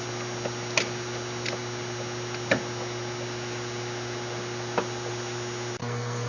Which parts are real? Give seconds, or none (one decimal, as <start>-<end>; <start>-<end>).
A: 0.0-5.8